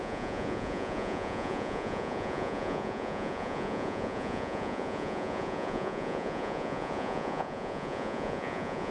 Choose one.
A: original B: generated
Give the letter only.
B